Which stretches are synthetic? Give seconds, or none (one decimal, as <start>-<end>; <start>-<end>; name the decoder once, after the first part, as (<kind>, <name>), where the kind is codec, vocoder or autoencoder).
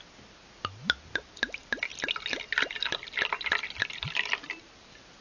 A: none